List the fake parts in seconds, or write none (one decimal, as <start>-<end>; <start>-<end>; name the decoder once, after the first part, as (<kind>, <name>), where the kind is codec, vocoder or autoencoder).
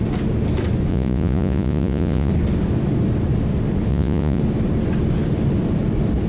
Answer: 0.9-2.3 (vocoder, Vocos); 3.9-4.4